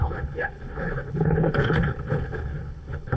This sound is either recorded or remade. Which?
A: remade